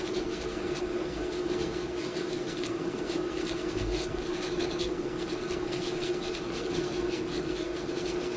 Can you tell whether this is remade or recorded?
remade